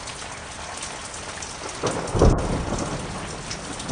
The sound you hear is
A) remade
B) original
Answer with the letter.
B